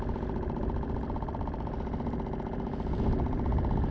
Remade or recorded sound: recorded